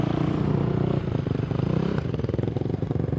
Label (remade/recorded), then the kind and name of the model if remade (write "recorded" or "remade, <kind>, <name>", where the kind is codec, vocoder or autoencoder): remade, vocoder, BigVGAN v2